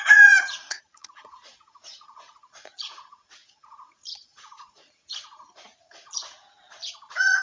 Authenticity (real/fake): fake